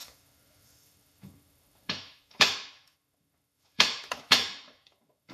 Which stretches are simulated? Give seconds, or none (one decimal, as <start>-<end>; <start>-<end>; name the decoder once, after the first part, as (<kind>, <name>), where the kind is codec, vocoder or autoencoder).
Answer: 0.0-5.3 (autoencoder, DAC-VAE)